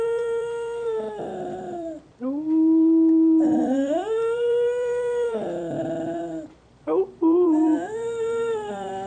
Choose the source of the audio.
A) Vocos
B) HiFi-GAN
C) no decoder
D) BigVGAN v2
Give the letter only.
D